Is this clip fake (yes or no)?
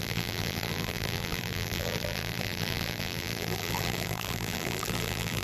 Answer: yes